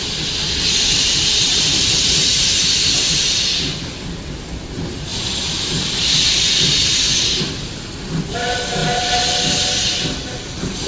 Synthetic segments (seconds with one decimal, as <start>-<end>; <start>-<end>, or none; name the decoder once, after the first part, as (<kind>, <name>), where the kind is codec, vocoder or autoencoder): none